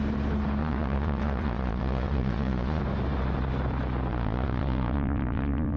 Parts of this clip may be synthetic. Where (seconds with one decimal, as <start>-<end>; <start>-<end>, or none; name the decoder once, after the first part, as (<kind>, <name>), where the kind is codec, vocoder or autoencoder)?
0.6-2.8 (vocoder, Vocos); 4.1-5.8